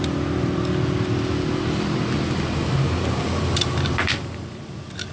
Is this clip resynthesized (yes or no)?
no